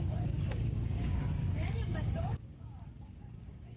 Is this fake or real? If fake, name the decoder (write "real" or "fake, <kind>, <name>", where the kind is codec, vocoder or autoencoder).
fake, codec, DAC